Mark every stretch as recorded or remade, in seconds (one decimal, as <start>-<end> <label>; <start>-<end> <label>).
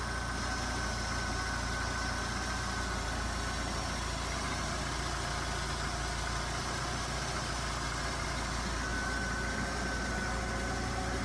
0.0-11.2 recorded